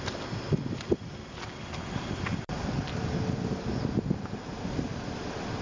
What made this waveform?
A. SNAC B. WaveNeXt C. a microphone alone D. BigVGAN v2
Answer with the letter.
D